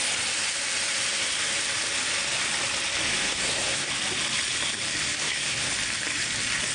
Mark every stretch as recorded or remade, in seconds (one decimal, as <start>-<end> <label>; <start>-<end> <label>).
0.0-3.2 recorded; 3.2-3.9 remade; 3.9-5.2 recorded; 5.2-5.7 remade; 5.7-6.7 recorded